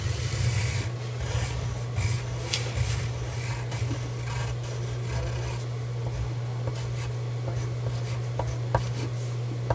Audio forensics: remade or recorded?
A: recorded